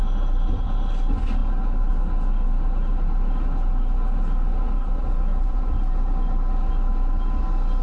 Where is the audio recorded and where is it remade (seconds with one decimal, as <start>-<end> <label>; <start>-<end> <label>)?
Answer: 0.0-7.8 recorded